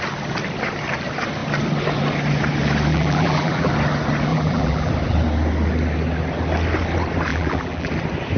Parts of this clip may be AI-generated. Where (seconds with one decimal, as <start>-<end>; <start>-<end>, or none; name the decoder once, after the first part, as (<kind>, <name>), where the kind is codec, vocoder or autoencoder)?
2.9-3.7 (vocoder, BigVGAN v2); 4.3-4.9; 7.3-7.9